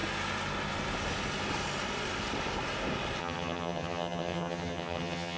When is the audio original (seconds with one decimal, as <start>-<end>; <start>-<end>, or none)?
0.0-3.2